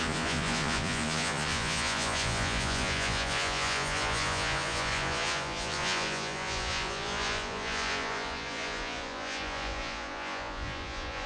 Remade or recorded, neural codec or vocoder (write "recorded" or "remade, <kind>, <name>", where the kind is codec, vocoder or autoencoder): remade, vocoder, Vocos